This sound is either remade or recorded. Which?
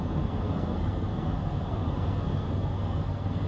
remade